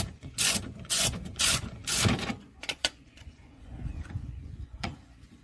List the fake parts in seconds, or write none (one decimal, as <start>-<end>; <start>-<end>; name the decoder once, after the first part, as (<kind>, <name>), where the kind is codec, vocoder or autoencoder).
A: 0.0-5.4 (vocoder, Vocos)